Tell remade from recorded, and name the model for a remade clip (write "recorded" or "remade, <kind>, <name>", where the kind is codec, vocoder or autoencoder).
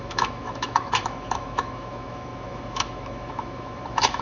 remade, autoencoder, DAC-VAE